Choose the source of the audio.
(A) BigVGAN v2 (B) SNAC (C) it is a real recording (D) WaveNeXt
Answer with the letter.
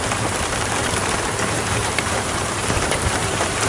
A